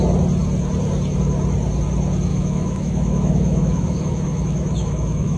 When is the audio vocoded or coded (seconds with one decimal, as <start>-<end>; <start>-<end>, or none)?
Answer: 2.3-5.4

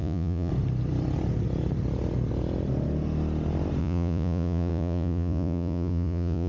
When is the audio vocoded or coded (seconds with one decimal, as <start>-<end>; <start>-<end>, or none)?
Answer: 0.0-0.5; 3.8-6.5